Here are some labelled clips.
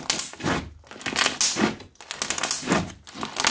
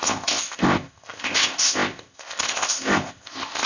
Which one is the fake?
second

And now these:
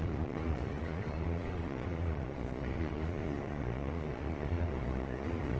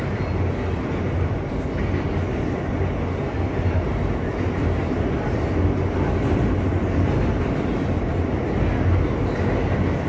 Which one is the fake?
first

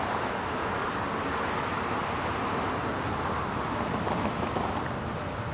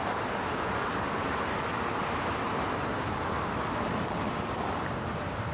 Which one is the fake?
second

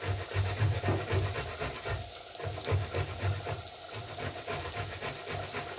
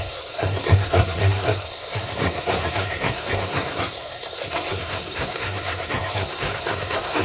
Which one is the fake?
second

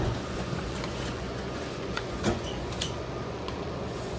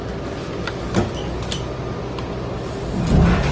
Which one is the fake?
first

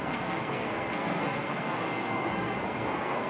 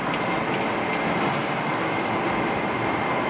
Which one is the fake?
first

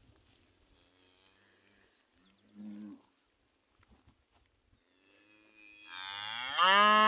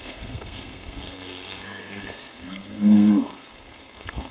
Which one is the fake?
second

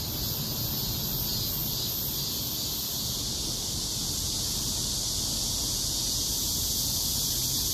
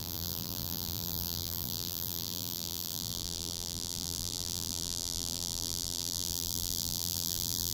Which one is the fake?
second